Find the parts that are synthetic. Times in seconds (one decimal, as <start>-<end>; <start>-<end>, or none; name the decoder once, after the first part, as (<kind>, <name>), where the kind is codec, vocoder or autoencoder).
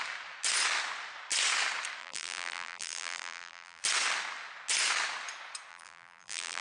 2.0-3.8 (vocoder, BigVGAN v2); 5.7-6.6